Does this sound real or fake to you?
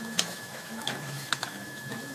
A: fake